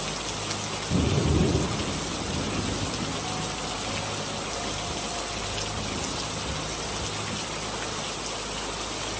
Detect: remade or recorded recorded